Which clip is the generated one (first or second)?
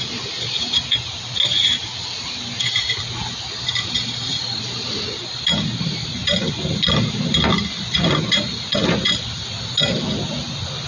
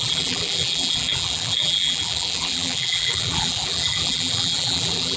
second